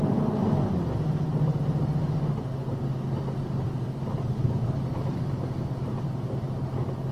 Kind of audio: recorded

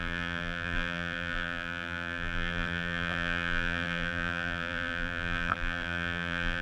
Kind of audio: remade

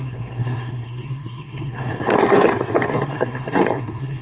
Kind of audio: remade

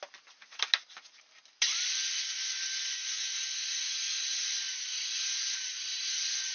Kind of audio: recorded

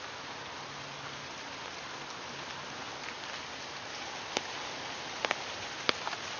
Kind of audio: recorded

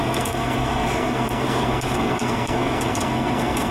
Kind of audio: remade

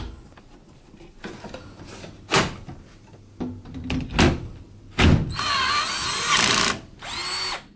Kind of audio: recorded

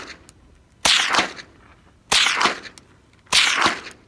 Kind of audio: recorded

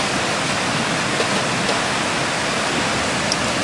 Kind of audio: recorded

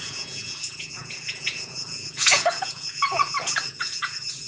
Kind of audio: remade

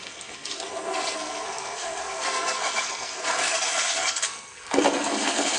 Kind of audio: remade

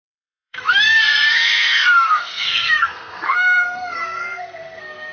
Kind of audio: remade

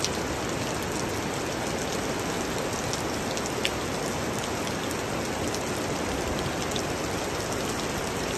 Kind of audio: recorded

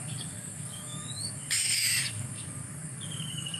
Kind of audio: remade